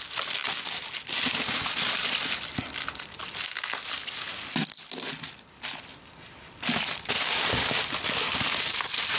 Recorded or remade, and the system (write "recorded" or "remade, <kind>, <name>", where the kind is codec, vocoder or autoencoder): recorded